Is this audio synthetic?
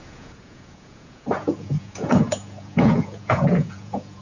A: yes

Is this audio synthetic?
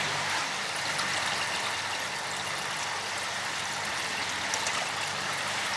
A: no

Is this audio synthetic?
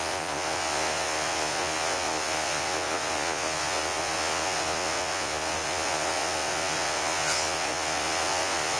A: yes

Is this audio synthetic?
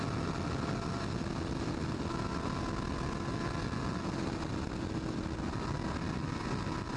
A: no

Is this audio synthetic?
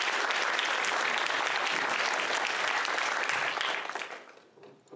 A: no